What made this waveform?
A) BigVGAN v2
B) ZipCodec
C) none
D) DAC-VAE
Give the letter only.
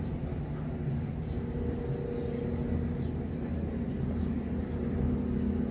C